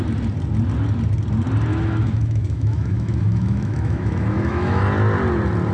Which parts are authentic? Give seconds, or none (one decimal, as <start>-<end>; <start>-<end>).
0.0-1.7; 4.8-5.7